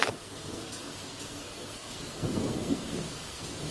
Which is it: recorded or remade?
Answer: remade